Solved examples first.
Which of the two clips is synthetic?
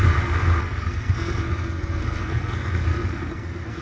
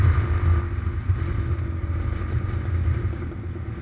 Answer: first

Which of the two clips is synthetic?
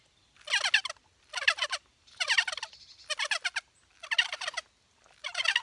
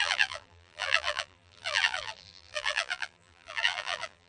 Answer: second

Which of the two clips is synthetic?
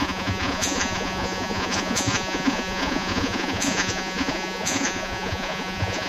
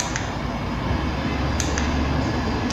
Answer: first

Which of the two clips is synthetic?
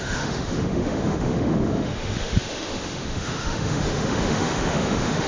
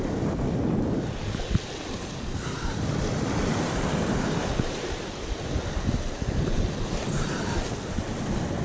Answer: first